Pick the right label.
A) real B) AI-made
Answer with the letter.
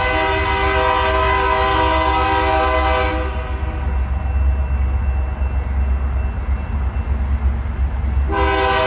A